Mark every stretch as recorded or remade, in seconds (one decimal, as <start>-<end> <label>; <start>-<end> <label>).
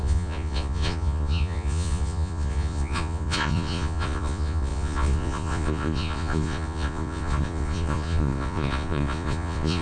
0.0-9.8 remade